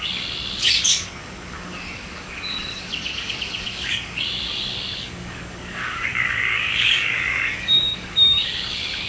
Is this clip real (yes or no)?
no